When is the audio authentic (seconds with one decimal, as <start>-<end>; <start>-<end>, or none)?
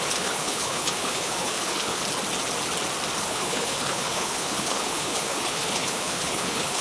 2.0-3.2